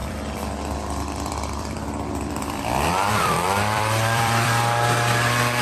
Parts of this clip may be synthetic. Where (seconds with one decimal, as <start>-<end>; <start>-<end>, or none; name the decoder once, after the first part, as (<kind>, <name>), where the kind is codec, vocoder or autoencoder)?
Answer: 0.0-5.6 (vocoder, BigVGAN v2)